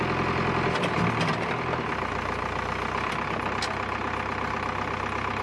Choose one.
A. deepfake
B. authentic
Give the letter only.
B